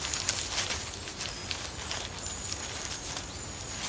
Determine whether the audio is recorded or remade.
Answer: recorded